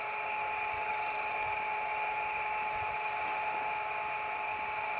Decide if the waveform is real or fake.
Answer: real